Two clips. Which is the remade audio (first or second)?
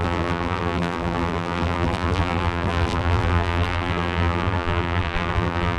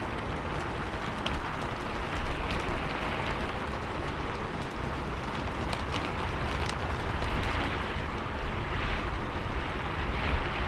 first